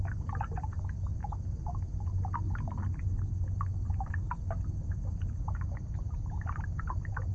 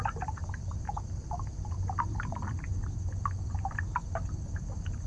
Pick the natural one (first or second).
first